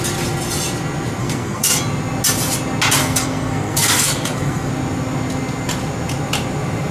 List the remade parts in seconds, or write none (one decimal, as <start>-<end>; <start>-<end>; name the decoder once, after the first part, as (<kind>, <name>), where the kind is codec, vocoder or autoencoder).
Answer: 1.2-1.8 (codec, SNAC); 3.0-4.7